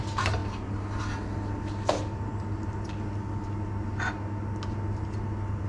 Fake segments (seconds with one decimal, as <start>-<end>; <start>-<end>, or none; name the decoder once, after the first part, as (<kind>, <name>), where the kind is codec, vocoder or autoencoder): none